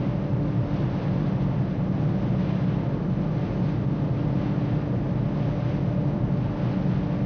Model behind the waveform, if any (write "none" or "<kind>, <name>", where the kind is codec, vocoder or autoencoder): none